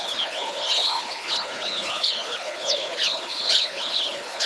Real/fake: fake